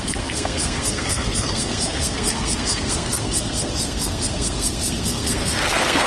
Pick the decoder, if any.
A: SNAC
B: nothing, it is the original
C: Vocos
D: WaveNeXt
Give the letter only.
A